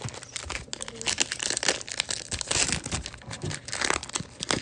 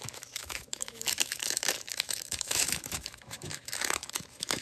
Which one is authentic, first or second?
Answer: first